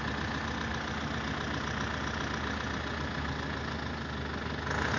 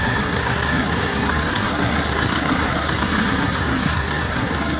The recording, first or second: first